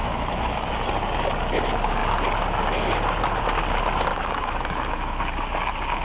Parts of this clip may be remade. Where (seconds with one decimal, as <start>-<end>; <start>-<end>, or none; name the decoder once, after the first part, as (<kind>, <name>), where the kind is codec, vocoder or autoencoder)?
0.0-0.7 (autoencoder, DAC-VAE); 4.1-5.2